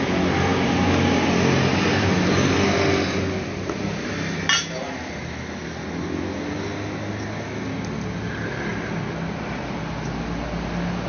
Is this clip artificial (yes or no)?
no